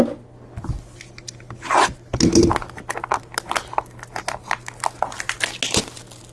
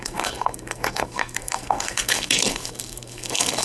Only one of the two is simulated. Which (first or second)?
second